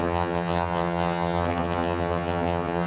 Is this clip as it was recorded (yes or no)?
no